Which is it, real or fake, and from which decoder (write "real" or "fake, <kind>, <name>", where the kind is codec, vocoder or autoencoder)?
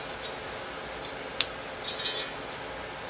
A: real